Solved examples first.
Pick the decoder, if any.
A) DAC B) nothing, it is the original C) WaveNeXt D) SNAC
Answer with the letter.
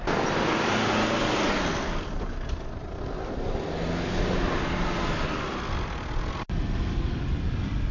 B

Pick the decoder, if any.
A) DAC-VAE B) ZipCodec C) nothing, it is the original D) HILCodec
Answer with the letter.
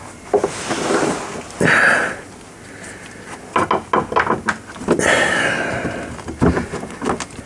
C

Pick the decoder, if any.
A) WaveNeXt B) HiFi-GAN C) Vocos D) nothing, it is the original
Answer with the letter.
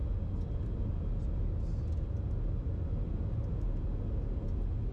D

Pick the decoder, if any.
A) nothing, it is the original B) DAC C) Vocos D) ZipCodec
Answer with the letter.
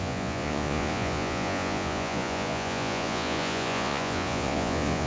C